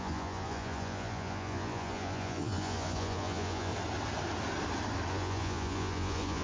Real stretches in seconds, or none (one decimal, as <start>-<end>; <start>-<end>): 3.7-5.1